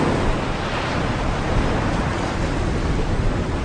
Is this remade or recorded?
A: recorded